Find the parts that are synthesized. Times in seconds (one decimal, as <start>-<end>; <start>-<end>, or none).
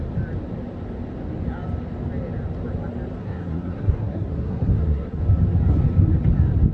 3.2-5.2